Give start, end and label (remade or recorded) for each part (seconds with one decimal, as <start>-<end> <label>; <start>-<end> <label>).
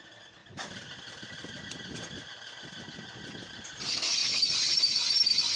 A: 0.0-5.6 recorded